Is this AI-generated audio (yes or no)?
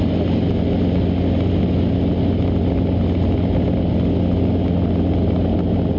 no